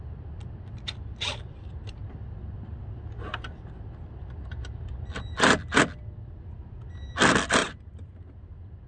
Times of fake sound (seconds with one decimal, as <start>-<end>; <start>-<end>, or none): 7.6-8.9